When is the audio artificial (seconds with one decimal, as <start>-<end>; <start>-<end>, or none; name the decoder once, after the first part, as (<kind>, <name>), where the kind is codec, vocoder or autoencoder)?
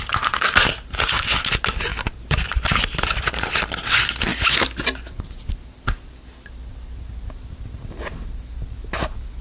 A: 1.9-3.5 (vocoder, BigVGAN v2)